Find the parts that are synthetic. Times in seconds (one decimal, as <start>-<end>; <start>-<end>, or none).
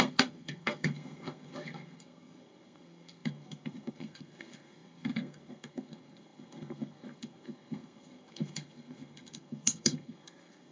0.0-10.7